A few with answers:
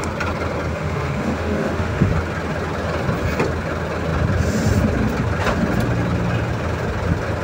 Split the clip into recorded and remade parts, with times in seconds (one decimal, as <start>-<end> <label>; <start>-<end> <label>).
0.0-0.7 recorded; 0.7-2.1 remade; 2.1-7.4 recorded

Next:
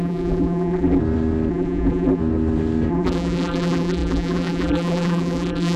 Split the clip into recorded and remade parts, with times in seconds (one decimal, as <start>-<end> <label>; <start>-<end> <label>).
0.0-1.0 remade; 1.0-1.5 recorded; 1.5-2.2 remade; 2.2-2.9 recorded; 2.9-5.8 remade

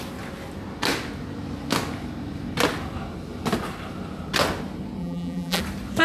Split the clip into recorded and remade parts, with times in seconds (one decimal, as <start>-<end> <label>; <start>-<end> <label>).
0.0-5.0 recorded; 5.0-5.6 remade; 5.6-6.0 recorded

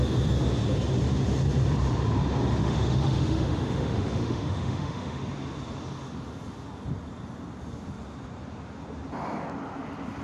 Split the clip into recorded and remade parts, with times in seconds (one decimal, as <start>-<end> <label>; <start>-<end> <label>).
0.0-2.6 recorded; 2.6-5.2 remade; 5.2-10.2 recorded

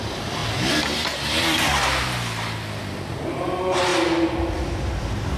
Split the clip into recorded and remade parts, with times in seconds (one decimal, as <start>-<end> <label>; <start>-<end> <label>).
0.0-3.9 remade; 3.9-4.8 recorded; 4.8-5.4 remade

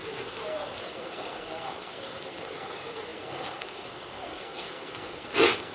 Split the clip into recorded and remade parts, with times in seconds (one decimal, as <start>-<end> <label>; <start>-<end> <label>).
0.0-5.7 remade